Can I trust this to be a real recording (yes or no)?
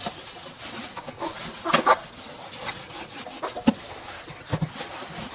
yes